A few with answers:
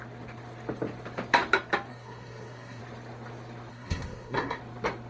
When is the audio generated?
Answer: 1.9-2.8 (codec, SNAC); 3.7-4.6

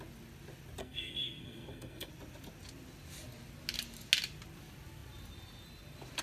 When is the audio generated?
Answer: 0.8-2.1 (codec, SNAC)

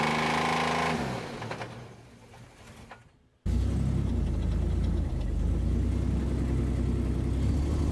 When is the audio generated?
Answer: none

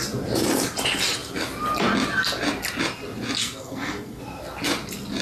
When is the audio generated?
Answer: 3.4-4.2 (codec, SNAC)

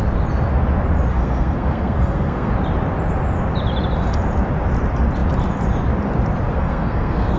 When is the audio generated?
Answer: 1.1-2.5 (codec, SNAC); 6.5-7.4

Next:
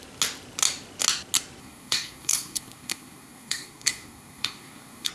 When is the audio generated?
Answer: 1.6-5.1 (codec, SNAC)